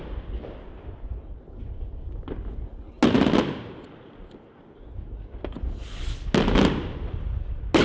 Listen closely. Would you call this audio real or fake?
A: real